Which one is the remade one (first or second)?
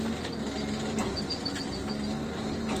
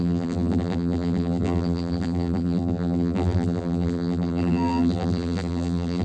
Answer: second